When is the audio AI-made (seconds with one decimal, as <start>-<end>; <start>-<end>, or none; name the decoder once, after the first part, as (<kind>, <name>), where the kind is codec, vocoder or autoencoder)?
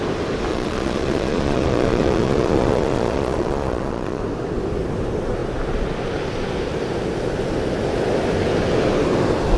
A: 0.5-4.2 (vocoder, Vocos)